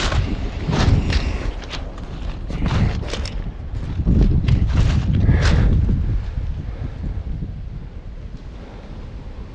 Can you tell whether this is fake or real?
real